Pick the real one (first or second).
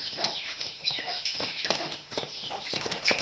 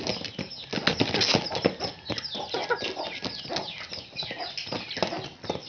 second